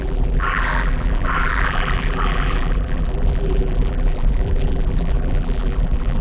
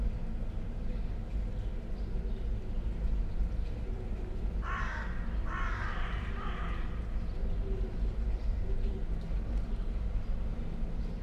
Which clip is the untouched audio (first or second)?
second